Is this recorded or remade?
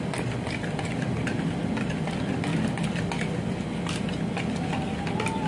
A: recorded